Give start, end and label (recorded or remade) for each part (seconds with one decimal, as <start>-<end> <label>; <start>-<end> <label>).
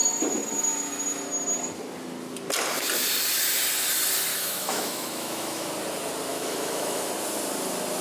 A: 0.0-4.3 recorded; 4.3-5.7 remade; 5.7-6.3 recorded; 6.3-7.1 remade; 7.1-8.0 recorded